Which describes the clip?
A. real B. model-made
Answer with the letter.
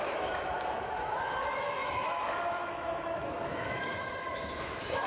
B